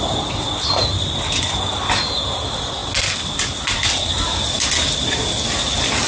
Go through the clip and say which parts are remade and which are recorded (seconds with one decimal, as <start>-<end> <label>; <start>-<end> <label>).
0.0-6.1 recorded